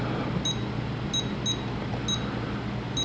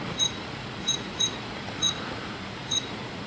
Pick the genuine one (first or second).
first